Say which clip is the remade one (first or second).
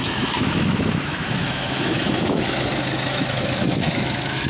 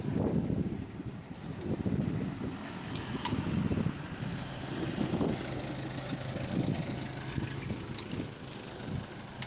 first